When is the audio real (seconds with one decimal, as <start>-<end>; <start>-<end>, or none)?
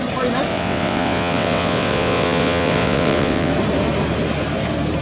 0.0-0.5; 3.5-5.0